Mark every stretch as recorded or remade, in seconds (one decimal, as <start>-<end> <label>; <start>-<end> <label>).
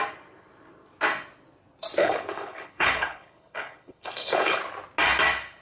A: 0.0-2.0 recorded; 2.0-4.6 remade; 4.6-5.6 recorded